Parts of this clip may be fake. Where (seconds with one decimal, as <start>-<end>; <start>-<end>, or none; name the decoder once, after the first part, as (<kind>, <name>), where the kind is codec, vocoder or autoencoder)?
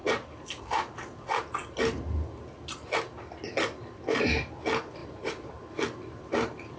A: 5.0-5.6 (vocoder, BigVGAN v2)